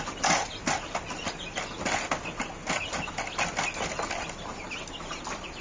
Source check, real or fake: real